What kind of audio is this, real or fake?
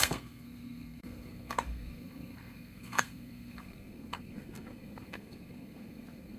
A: fake